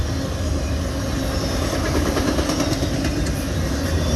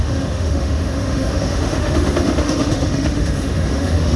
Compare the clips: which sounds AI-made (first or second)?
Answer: second